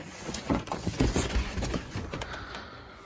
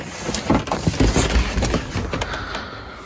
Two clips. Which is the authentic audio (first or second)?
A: second